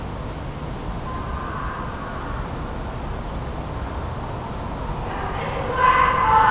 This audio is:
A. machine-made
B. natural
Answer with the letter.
B